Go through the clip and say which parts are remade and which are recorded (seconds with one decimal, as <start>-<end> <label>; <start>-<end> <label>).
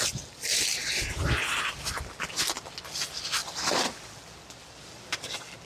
0.0-5.6 remade